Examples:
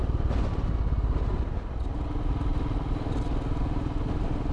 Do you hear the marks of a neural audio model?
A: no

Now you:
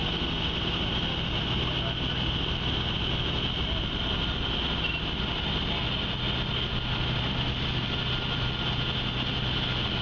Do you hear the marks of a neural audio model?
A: no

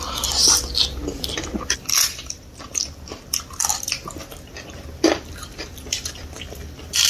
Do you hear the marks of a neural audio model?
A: yes